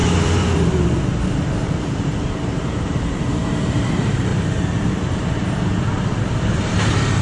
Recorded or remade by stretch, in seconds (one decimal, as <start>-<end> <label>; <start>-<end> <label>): 0.0-1.8 recorded; 1.8-4.3 remade; 4.3-6.6 recorded; 6.6-7.2 remade